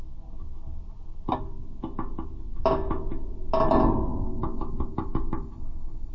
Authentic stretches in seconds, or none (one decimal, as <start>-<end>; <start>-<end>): 0.0-4.1